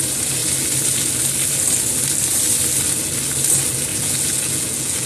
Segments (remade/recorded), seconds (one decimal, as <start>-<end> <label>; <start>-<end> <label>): 0.0-3.9 recorded; 3.9-5.1 remade